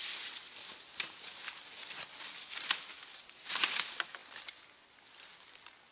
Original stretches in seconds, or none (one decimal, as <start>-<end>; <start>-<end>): 0.0-5.9